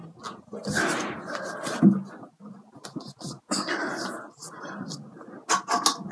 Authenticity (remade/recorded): recorded